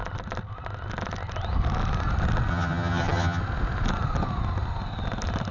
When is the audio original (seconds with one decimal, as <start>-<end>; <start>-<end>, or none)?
0.0-2.5; 3.4-5.5

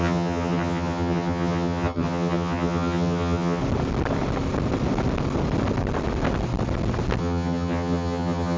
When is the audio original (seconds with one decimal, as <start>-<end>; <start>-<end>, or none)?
3.6-7.2

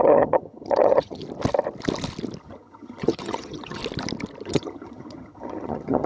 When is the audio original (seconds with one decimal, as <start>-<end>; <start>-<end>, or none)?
1.2-2.4; 3.8-4.4

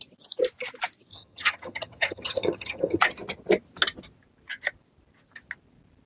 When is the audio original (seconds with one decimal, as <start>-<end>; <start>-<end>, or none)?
0.0-1.1; 3.0-6.1